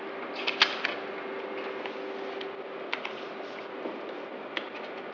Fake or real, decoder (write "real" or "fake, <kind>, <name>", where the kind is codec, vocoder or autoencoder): real